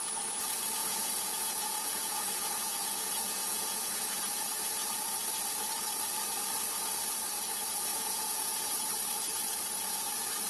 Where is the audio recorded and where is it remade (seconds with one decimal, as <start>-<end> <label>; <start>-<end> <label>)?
0.0-0.8 recorded; 0.8-4.2 remade; 4.2-7.9 recorded; 7.9-8.7 remade; 8.7-10.5 recorded